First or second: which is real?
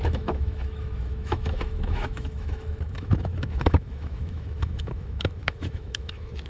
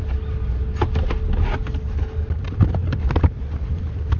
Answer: second